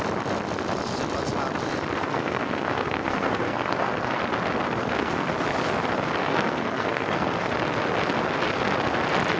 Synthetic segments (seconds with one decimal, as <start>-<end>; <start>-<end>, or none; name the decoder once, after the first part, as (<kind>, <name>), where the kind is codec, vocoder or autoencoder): 2.0-4.2 (codec, SNAC); 4.8-5.3; 6.2-7.5